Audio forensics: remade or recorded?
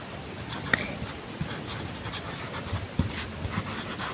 recorded